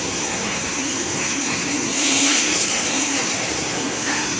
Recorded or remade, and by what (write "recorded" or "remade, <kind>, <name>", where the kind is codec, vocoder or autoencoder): remade, codec, SNAC